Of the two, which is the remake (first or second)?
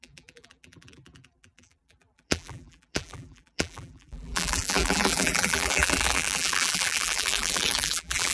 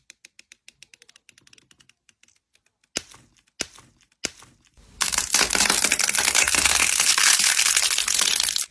first